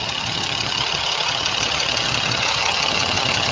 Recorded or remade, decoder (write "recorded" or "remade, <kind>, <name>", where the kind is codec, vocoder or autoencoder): remade, vocoder, HiFi-GAN